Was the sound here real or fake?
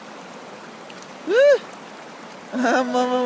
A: real